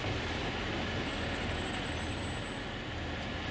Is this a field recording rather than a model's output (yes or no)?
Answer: yes